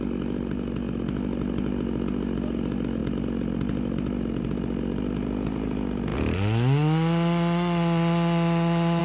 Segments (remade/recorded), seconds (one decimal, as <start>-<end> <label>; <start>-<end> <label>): 0.0-9.0 recorded